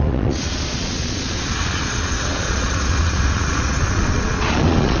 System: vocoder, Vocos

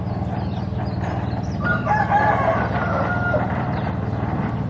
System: none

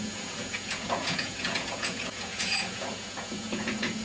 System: vocoder, Vocos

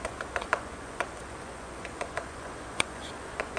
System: vocoder, Vocos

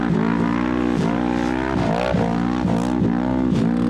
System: none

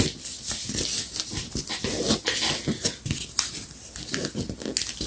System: none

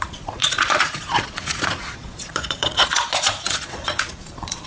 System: vocoder, Vocos